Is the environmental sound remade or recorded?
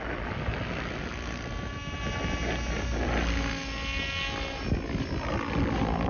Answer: recorded